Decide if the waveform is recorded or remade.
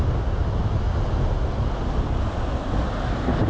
recorded